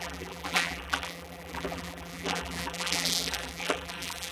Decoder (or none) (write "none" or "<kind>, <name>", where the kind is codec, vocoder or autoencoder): vocoder, BigVGAN v2